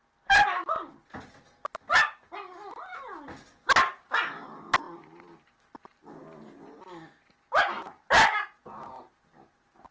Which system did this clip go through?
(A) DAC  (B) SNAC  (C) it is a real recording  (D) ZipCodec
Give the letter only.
C